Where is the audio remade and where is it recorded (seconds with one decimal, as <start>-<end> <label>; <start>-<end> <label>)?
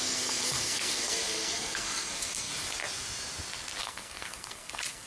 0.0-2.5 remade; 2.5-3.8 recorded; 3.8-5.1 remade